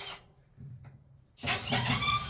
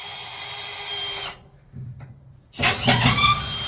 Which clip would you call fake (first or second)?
first